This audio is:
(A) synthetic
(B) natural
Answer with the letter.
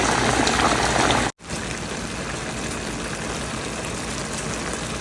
B